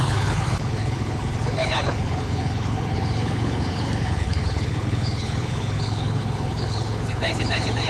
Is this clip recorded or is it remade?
remade